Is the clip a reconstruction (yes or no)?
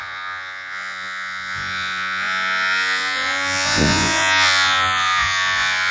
yes